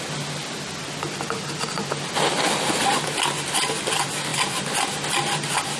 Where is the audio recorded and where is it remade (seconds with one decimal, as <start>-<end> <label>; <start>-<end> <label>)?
0.0-5.8 recorded